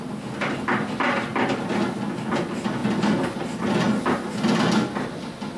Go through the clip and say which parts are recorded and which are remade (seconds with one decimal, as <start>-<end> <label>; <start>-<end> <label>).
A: 0.0-5.6 recorded

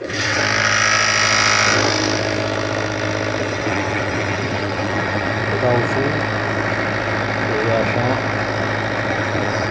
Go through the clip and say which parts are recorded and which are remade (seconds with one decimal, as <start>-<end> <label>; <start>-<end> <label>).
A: 0.0-0.4 remade; 0.4-3.4 recorded; 3.4-5.4 remade; 5.4-9.1 recorded; 9.1-9.7 remade